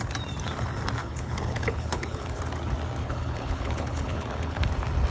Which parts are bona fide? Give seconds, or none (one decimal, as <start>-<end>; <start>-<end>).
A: 0.0-1.0; 2.4-3.0; 4.6-5.1